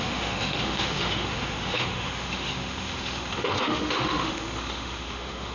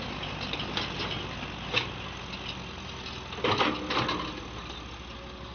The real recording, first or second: second